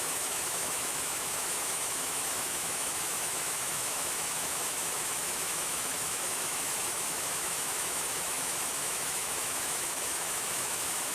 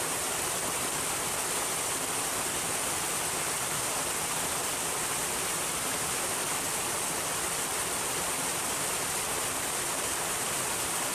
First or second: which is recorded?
second